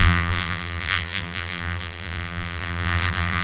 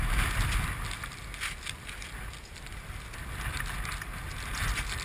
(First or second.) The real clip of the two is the second